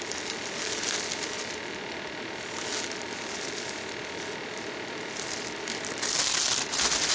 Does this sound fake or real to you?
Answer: real